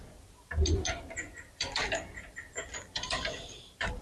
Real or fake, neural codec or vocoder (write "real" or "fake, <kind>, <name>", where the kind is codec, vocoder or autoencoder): fake, vocoder, BigVGAN v2